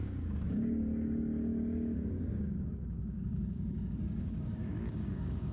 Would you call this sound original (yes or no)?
no